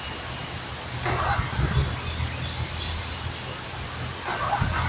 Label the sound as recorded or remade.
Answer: recorded